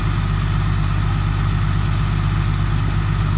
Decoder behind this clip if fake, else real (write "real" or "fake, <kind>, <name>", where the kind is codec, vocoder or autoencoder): real